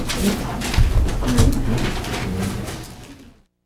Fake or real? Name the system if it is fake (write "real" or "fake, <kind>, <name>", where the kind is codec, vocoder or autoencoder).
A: real